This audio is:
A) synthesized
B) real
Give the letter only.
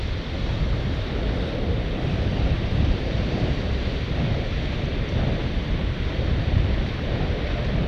A